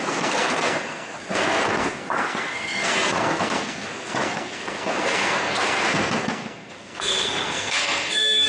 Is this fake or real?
fake